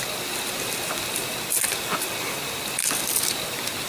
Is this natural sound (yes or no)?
yes